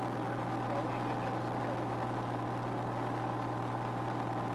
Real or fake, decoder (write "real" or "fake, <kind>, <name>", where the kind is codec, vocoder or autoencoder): real